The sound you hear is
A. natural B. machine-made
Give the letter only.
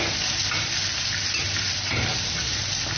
A